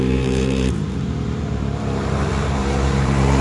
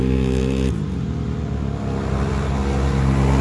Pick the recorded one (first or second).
second